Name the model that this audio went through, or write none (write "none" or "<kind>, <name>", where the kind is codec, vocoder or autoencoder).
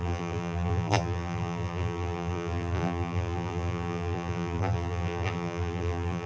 vocoder, BigVGAN v2